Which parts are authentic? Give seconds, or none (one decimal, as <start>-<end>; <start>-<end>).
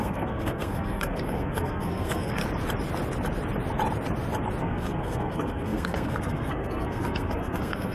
2.4-4.6